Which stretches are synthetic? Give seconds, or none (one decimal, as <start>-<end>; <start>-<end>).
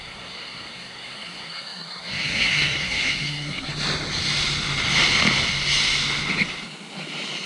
0.0-3.7